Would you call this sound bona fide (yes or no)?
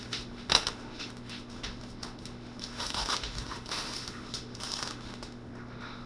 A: no